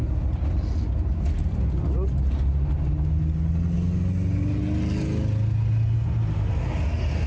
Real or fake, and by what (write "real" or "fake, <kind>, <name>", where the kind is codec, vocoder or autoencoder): real